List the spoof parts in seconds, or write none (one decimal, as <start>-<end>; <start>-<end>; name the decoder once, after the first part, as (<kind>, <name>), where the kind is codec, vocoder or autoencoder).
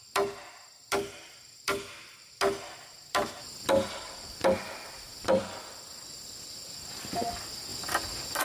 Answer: 5.1-6.3 (vocoder, BigVGAN v2)